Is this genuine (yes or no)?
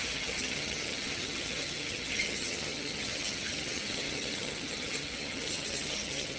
no